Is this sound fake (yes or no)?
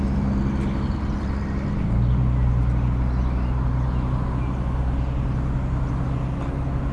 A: no